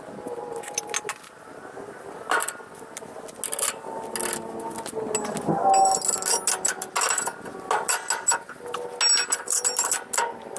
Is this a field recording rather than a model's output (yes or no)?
yes